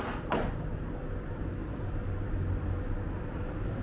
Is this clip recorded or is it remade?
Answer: remade